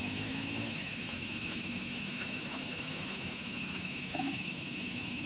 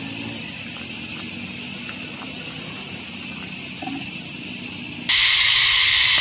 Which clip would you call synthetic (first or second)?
first